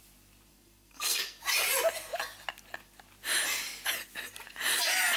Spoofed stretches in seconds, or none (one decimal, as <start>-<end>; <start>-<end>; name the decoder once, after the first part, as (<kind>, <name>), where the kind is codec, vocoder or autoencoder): 0.5-1.4 (codec, SNAC)